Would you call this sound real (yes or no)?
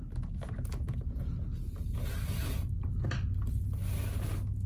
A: yes